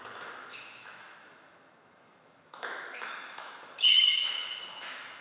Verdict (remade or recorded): remade